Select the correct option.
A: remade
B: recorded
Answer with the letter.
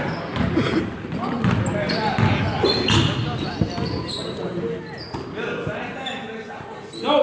B